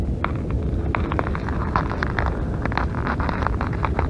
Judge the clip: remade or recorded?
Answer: recorded